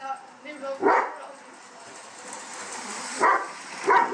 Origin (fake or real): real